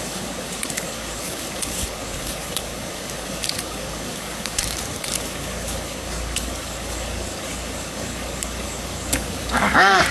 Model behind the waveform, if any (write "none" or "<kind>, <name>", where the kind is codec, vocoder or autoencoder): codec, DAC